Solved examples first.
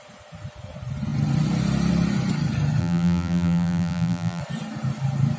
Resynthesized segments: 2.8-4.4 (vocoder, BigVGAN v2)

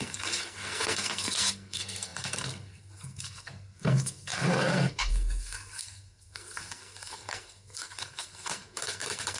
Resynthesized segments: 0.0-9.4 (codec, SNAC)